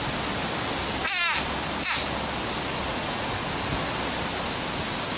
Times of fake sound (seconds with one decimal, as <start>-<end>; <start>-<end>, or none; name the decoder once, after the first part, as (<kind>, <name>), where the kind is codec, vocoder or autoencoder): 2.9-3.5 (vocoder, Vocos)